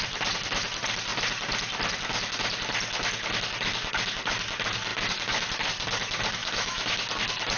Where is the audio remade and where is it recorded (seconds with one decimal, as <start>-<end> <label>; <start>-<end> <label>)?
0.0-6.4 recorded; 6.4-6.9 remade; 6.9-7.6 recorded